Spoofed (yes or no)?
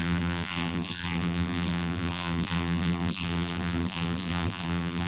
yes